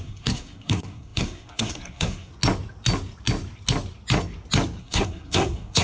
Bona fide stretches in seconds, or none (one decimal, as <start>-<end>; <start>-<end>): 2.3-4.8

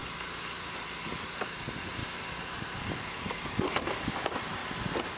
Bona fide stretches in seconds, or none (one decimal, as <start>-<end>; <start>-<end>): 0.0-0.8; 2.0-4.1; 4.6-5.2

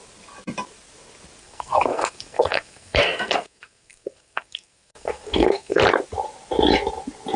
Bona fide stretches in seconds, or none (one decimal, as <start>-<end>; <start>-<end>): 0.0-1.4; 5.8-7.4

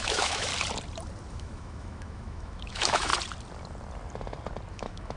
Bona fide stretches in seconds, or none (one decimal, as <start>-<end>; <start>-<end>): 0.5-1.3; 3.1-4.7

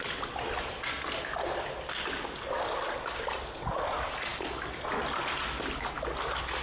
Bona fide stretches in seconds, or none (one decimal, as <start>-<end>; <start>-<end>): 0.0-6.6

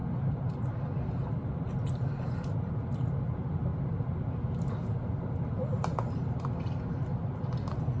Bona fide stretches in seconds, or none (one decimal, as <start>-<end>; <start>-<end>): 0.0-8.0

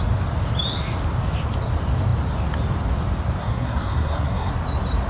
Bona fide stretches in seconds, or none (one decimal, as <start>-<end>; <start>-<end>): 0.0-3.4; 4.5-5.1